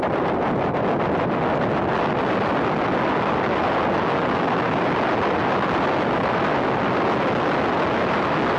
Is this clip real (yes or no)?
yes